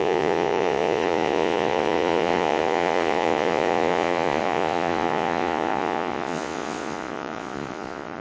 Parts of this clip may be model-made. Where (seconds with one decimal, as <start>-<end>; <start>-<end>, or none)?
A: 0.0-8.2